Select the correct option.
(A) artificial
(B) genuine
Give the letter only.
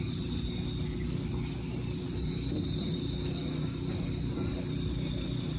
B